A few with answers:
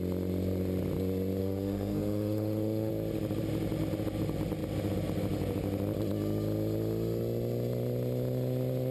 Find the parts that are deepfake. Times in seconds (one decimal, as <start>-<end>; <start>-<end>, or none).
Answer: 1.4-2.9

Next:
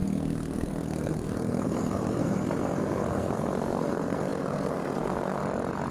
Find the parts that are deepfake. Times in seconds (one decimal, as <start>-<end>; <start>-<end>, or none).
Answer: 0.0-5.4

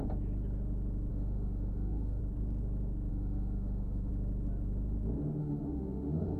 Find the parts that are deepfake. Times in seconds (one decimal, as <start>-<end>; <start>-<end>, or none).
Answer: 1.1-2.2; 3.1-4.1; 5.4-6.4

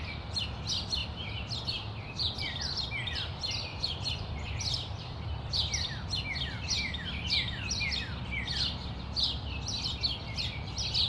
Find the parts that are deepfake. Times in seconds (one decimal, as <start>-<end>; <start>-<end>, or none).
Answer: 3.7-4.6

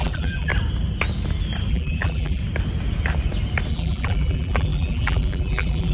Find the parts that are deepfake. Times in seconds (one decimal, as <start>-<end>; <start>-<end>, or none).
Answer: 0.0-0.5; 1.7-2.4; 3.7-5.9

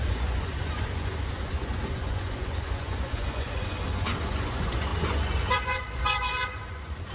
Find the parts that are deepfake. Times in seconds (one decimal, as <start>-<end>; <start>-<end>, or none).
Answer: 0.0-7.1